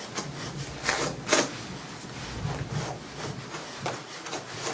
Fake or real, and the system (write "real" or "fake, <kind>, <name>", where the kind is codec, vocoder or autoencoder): real